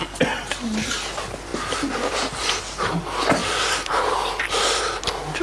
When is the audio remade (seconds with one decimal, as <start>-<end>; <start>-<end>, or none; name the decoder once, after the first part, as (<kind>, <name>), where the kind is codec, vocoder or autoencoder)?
3.4-5.0 (vocoder, BigVGAN v2)